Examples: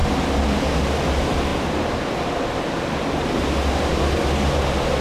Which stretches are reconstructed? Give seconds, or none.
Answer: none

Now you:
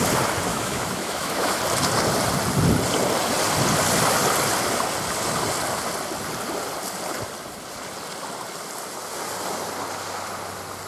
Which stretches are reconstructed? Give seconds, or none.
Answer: 0.5-1.6 (autoencoder, DAC-VAE)

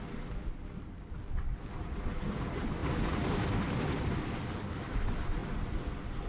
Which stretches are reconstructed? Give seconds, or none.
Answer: none

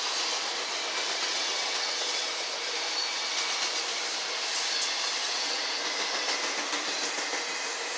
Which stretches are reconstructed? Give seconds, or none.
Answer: 1.3-2.3 (vocoder, WaveNeXt); 5.2-5.8